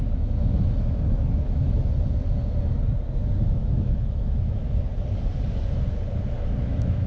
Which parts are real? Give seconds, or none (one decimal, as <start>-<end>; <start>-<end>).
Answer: 1.8-3.3; 4.6-6.6